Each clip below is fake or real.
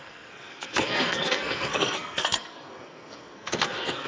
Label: fake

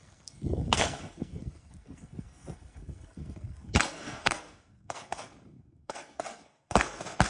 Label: fake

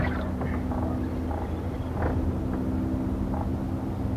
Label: real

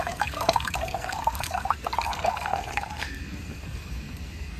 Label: fake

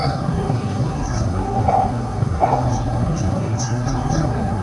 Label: fake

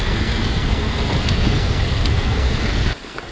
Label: fake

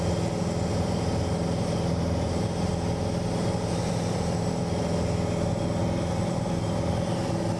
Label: real